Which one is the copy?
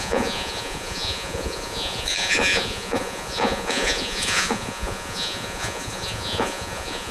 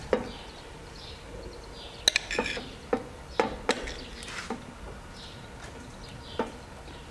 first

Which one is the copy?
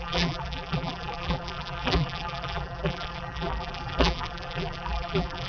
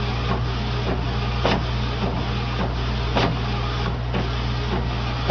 first